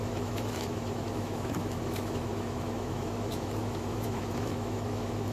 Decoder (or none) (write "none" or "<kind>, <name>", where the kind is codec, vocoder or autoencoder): autoencoder, DAC-VAE